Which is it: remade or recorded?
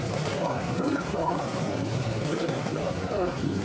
remade